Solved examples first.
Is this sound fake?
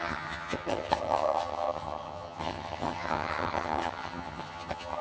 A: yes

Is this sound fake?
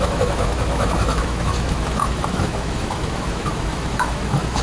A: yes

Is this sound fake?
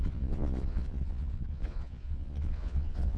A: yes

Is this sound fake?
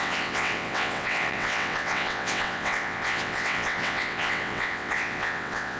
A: yes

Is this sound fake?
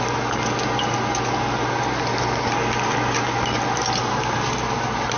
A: no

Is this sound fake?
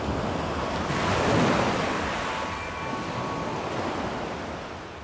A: no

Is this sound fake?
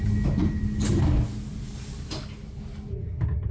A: no